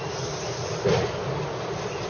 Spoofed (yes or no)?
yes